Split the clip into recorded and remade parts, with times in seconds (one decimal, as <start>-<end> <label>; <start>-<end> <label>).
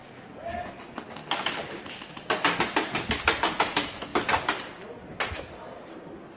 0.0-6.4 recorded